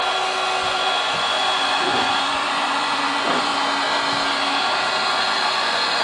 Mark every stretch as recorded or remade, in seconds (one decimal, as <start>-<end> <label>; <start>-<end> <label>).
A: 0.0-3.5 remade; 3.5-5.1 recorded; 5.1-6.0 remade